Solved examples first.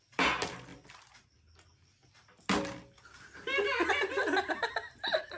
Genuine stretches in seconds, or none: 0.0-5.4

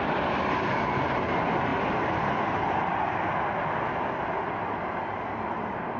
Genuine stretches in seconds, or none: 0.0-6.0

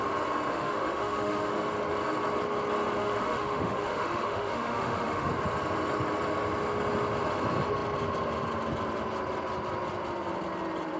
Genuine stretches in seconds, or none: 0.0-0.5; 1.5-3.0; 5.3-11.0